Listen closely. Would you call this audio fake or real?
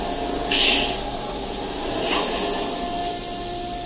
real